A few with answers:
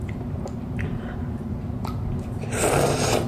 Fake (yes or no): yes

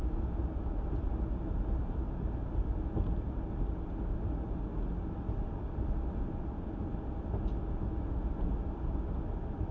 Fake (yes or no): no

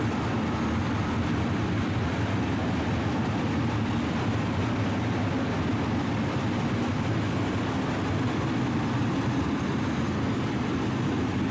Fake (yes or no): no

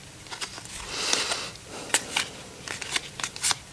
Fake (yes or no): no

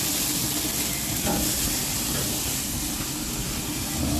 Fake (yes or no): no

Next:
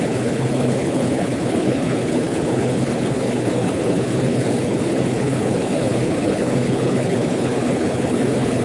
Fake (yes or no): yes